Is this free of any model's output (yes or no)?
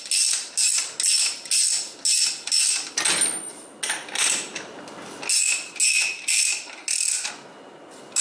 yes